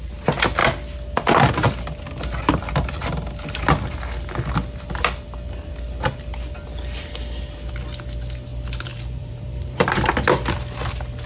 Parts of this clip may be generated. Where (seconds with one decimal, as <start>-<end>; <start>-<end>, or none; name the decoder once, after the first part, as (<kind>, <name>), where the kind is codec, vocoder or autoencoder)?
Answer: 8.9-10.1 (vocoder, BigVGAN v2)